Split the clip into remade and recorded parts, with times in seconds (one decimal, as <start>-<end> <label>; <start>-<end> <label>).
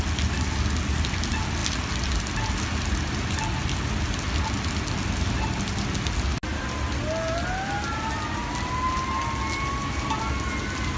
0.0-11.0 recorded